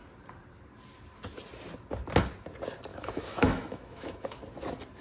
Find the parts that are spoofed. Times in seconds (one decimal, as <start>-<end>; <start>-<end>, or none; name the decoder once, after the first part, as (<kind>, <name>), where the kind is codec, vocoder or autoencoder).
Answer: 2.9-4.4 (autoencoder, DAC-VAE)